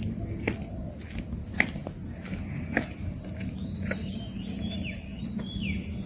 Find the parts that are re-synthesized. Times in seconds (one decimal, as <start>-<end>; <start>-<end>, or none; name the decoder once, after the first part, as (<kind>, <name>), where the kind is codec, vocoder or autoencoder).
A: none

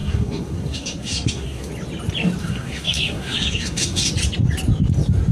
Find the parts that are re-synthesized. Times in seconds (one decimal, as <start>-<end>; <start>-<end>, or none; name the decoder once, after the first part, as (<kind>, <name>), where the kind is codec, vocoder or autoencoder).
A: 0.0-1.7 (codec, SNAC); 2.4-4.1